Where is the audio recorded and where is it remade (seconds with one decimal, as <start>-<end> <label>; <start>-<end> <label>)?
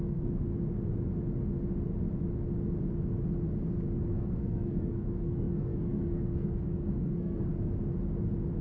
0.0-0.5 remade; 0.5-4.1 recorded; 4.1-7.5 remade; 7.5-8.6 recorded